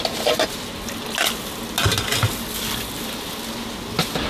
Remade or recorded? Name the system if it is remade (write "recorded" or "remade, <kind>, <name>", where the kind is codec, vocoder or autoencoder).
recorded